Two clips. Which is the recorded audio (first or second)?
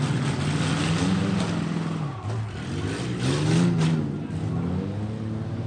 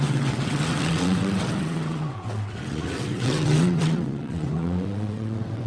first